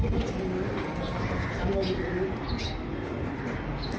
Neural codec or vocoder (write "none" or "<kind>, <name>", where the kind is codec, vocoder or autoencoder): none